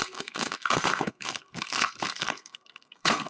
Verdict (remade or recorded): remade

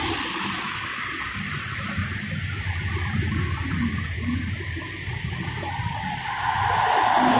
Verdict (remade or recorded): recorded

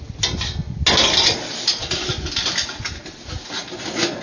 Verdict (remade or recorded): recorded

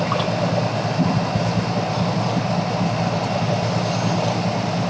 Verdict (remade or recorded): recorded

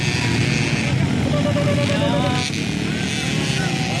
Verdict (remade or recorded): recorded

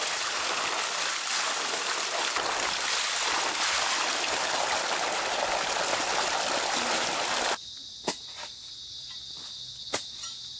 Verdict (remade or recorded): recorded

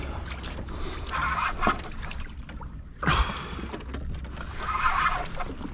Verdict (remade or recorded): recorded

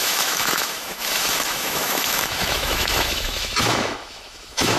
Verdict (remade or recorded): remade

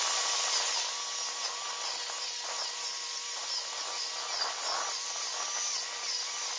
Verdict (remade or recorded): recorded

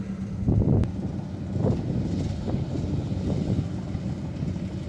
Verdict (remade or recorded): recorded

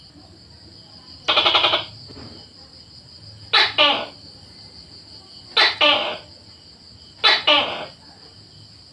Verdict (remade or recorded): recorded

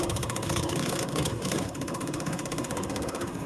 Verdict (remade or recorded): remade